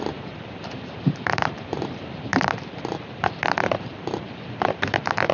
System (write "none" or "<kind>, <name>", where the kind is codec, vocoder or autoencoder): vocoder, BigVGAN v2